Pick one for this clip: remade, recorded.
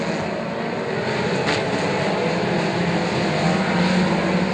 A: recorded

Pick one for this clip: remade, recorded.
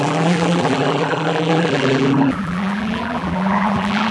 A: remade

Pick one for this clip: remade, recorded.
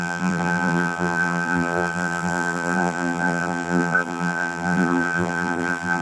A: remade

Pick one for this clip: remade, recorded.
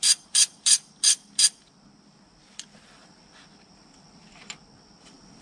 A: remade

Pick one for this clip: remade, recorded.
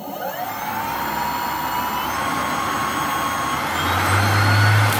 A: recorded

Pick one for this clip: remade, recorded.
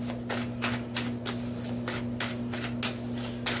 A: recorded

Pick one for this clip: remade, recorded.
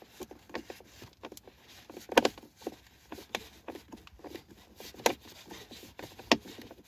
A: recorded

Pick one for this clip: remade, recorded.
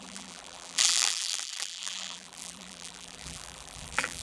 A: remade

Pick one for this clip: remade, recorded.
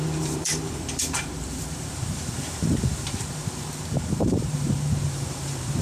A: remade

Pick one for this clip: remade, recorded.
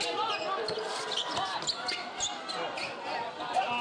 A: recorded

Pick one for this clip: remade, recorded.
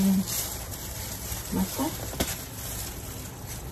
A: remade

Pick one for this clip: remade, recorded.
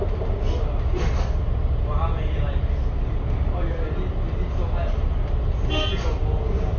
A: recorded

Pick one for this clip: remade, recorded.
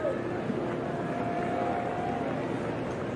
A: recorded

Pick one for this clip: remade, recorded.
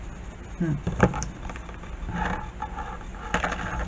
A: recorded